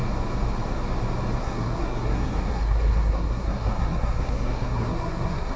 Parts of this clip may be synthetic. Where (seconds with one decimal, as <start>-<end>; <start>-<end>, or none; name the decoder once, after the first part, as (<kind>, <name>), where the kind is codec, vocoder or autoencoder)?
1.4-5.6 (codec, SNAC)